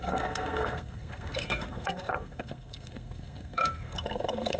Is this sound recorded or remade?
remade